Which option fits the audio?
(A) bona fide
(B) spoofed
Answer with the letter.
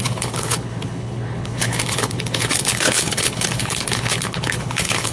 B